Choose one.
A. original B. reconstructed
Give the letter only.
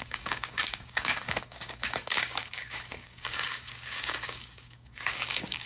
B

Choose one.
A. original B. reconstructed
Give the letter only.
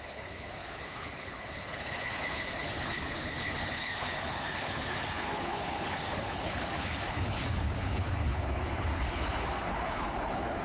B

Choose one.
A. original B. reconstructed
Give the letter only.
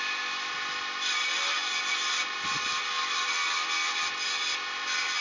A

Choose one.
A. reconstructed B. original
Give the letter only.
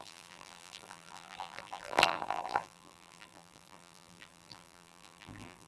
A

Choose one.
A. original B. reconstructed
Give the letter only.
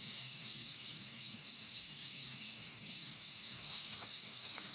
B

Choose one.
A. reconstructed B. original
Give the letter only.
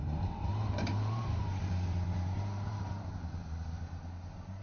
A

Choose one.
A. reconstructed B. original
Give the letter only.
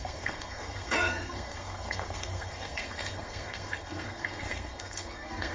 A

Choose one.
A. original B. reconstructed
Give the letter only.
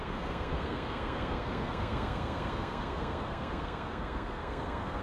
B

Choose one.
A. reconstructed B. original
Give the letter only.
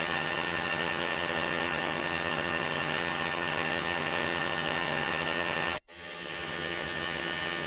A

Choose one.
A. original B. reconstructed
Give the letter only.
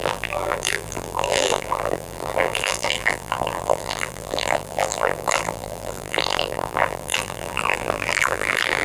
B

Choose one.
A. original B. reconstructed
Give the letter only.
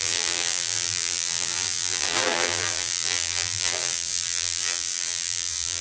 B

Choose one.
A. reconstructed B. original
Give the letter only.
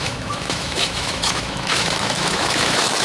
A